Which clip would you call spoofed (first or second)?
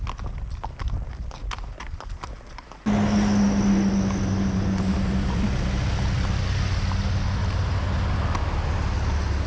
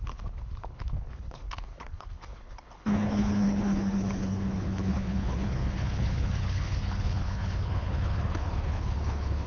second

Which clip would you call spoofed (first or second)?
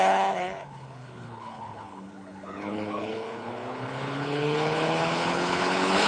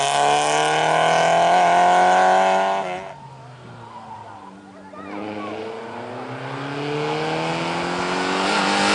first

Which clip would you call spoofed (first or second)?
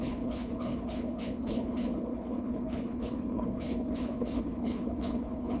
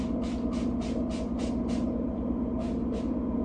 first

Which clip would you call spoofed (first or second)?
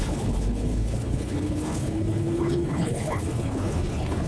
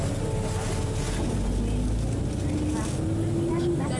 first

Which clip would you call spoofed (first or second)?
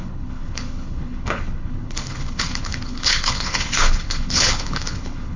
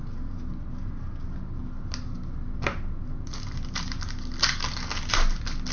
first